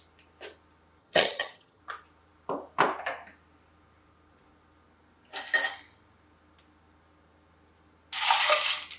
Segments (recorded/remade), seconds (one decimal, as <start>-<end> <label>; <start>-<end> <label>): 0.0-1.0 recorded; 1.0-1.8 remade; 1.8-9.0 recorded